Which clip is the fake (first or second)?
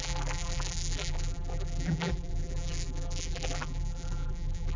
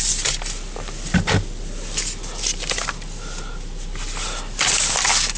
first